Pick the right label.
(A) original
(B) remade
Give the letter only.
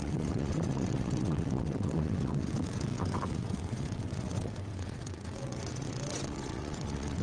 B